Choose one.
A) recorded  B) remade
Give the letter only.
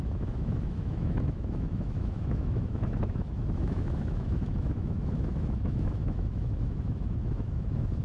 B